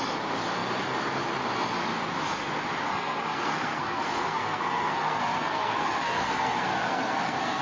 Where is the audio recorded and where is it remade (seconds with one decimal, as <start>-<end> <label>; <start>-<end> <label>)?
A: 0.0-2.9 recorded; 2.9-7.6 remade